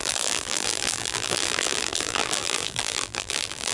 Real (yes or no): no